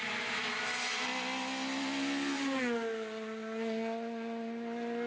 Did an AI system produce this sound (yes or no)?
no